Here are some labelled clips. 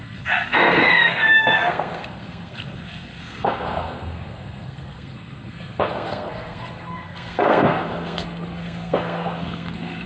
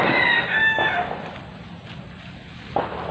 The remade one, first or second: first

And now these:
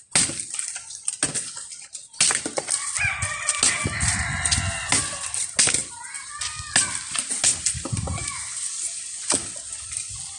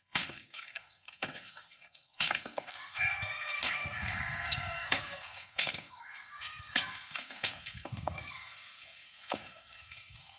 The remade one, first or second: second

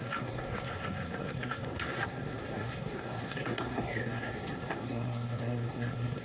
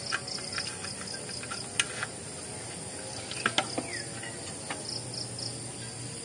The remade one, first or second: first